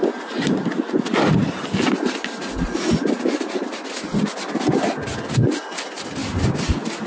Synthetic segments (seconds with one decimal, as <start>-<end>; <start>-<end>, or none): none